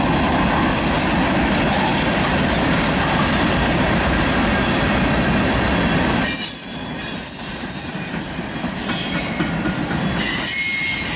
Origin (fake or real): real